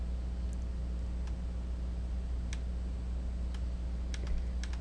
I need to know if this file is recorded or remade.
recorded